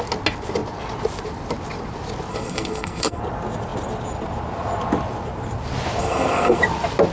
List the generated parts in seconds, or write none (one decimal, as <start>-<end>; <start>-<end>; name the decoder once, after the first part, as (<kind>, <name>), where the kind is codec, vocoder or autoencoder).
2.3-3.2 (codec, SNAC); 6.0-6.6